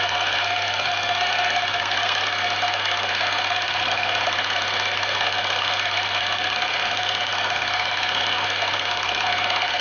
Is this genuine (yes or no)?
no